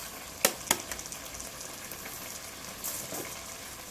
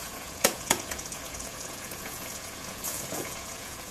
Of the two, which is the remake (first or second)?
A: second